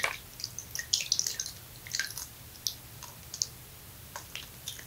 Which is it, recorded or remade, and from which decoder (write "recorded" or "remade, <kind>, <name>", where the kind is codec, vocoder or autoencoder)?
recorded